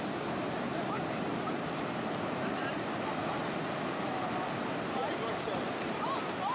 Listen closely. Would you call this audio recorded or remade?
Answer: recorded